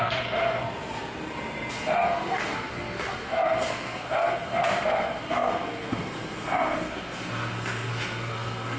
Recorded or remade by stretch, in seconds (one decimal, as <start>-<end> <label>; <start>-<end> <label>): 0.0-0.6 remade; 0.6-1.7 recorded; 1.7-8.8 remade